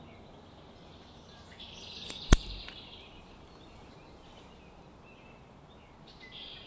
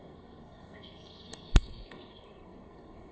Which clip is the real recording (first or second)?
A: first